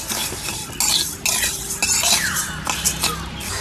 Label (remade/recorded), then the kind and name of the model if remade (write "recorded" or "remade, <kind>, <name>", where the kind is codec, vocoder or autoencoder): recorded